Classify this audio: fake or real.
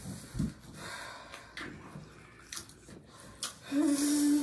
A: real